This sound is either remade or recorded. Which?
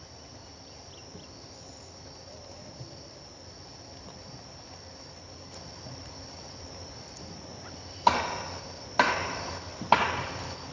recorded